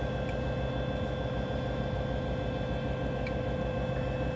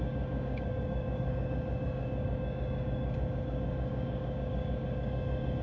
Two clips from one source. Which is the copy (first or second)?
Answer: second